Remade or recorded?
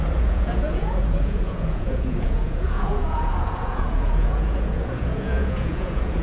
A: remade